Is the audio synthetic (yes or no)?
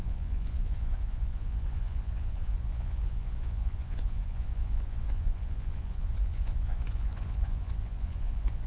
yes